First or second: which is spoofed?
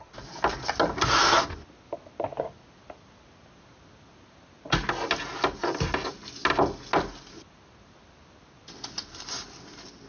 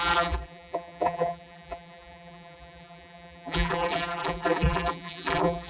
second